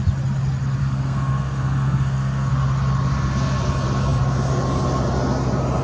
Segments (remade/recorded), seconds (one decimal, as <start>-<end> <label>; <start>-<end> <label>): 0.0-0.8 recorded; 0.8-2.5 remade; 2.5-5.8 recorded